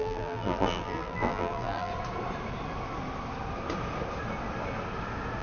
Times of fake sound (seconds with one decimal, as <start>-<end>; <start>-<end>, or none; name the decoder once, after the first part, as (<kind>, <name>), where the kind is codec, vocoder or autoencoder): 0.0-1.9 (vocoder, BigVGAN v2)